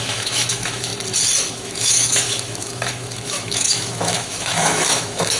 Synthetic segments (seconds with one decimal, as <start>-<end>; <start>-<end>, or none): 0.0-0.9; 1.5-5.4